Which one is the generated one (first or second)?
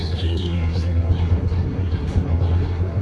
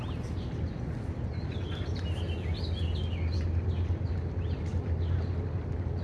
first